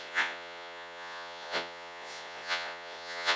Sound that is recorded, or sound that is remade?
remade